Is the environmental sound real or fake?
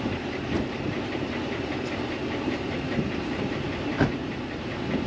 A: fake